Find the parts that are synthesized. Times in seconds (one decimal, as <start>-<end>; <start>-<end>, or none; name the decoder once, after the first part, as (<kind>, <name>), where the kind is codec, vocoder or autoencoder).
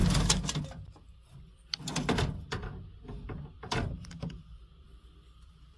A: 3.5-5.8 (vocoder, BigVGAN v2)